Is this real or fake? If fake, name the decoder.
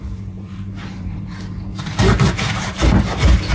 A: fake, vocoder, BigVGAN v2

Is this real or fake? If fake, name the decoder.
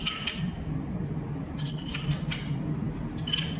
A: real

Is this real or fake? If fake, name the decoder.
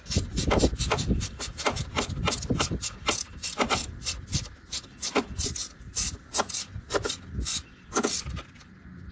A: fake, vocoder, BigVGAN v2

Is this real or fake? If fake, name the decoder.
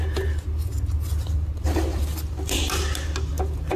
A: real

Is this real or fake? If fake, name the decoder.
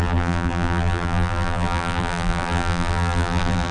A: fake, vocoder, BigVGAN v2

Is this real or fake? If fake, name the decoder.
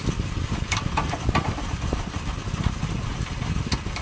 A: real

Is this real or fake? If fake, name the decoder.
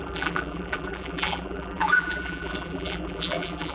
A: fake, vocoder, BigVGAN v2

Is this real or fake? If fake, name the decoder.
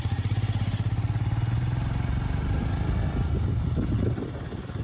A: real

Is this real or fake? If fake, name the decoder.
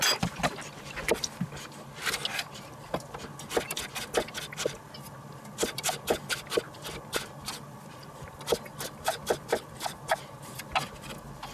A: real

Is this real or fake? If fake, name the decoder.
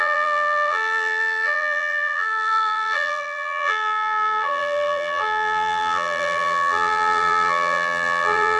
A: fake, vocoder, BigVGAN v2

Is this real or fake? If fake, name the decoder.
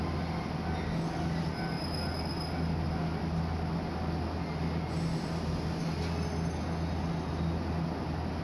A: real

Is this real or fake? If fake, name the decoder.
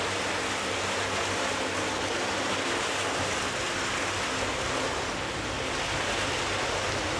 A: real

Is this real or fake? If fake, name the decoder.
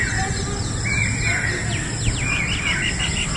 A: real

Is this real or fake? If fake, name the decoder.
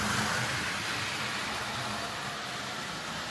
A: fake, vocoder, BigVGAN v2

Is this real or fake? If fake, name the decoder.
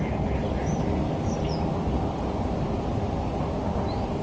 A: real